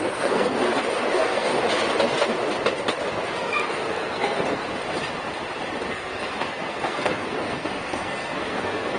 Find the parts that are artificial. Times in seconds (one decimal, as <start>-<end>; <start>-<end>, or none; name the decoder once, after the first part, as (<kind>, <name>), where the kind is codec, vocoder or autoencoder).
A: 0.0-0.6 (codec, SNAC); 1.1-1.5; 3.1-4.6; 5.9-9.0